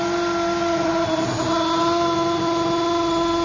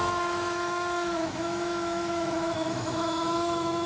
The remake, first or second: second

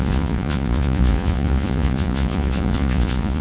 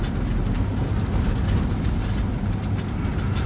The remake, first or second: first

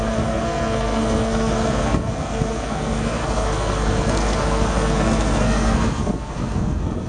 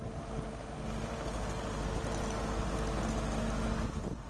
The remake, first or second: first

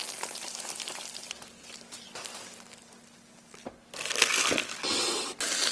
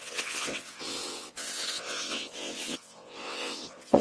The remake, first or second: second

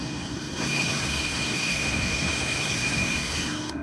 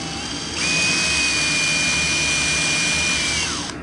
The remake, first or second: first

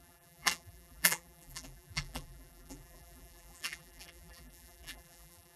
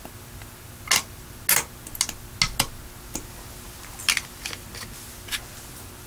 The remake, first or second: first